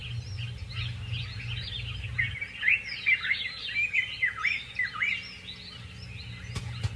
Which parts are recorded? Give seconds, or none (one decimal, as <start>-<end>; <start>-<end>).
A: 0.0-7.0